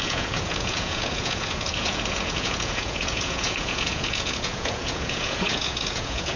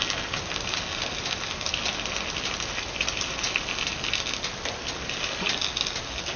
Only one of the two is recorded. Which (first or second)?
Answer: second